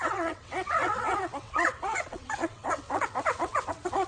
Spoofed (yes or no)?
yes